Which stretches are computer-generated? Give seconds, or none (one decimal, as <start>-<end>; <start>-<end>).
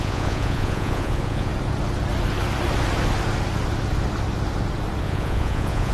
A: 0.0-1.5; 5.0-5.9